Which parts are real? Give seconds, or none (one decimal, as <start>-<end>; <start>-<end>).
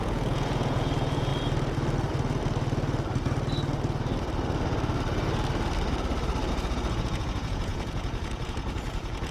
1.3-6.5